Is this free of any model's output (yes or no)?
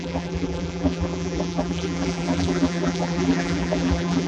no